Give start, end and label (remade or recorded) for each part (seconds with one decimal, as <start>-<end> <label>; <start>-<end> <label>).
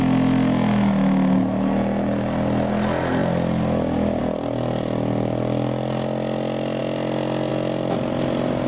0.0-8.7 recorded